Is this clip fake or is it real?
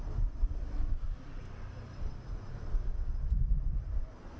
real